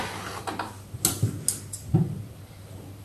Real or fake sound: real